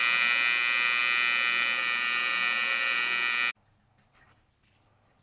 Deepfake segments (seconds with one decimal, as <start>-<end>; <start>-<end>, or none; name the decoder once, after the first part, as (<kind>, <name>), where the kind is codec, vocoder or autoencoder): none